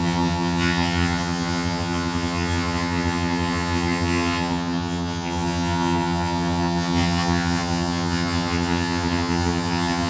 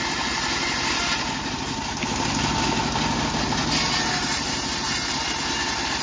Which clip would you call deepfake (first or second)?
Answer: first